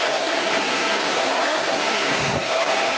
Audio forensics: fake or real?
fake